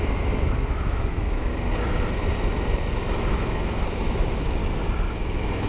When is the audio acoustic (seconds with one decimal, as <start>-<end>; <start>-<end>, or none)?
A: 1.5-3.3; 4.6-5.1